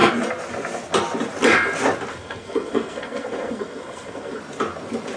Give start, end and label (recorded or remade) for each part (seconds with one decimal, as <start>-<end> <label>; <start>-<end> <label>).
0.0-2.1 recorded; 2.1-4.4 remade; 4.4-5.2 recorded